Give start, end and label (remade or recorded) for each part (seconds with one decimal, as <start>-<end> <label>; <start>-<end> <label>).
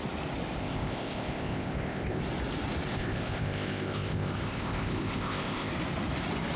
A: 0.0-0.6 recorded; 0.6-2.2 remade; 2.2-2.9 recorded; 2.9-5.7 remade; 5.7-6.6 recorded